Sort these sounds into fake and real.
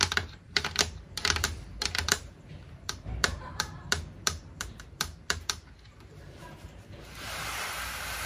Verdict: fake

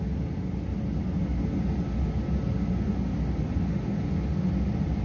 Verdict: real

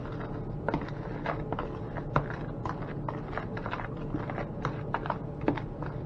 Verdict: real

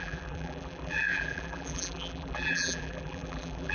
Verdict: fake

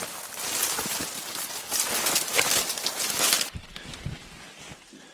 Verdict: real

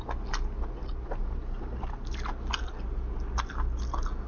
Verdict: real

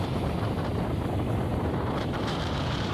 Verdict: fake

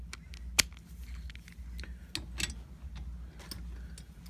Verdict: real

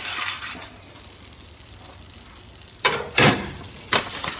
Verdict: fake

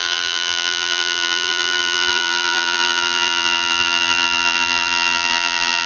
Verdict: fake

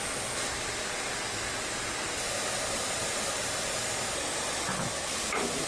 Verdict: fake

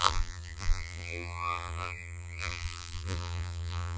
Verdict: fake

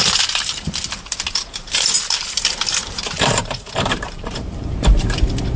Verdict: fake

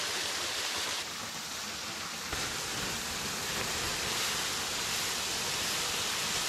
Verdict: fake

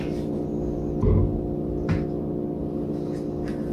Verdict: real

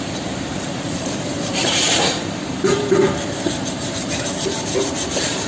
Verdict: fake